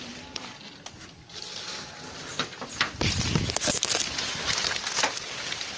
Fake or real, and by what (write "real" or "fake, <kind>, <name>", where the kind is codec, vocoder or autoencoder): real